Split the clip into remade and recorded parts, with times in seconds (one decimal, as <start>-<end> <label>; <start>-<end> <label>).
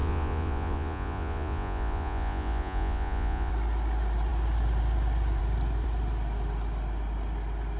0.0-3.5 remade; 3.5-7.8 recorded